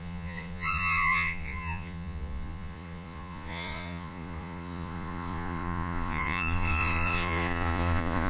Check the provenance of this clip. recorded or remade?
remade